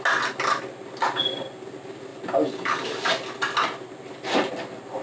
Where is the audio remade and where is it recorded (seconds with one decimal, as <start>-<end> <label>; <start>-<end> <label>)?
0.0-5.0 recorded